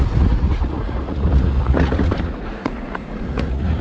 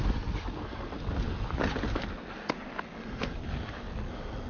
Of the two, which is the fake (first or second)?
first